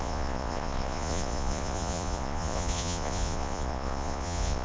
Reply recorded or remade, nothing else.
remade